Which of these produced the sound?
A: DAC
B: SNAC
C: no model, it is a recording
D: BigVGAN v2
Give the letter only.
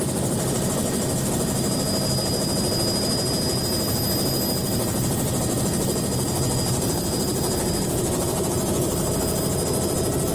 C